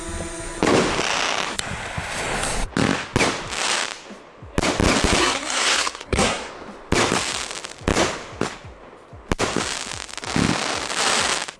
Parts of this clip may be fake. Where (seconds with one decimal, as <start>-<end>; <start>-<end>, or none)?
5.2-6.5